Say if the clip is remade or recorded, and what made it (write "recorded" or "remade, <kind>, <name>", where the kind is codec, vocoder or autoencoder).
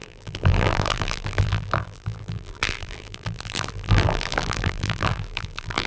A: remade, vocoder, BigVGAN v2